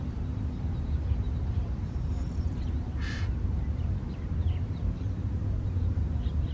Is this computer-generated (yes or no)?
yes